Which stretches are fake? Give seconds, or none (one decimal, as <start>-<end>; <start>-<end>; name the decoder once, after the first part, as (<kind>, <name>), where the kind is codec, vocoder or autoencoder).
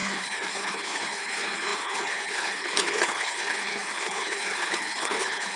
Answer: 0.0-5.6 (codec, HILCodec)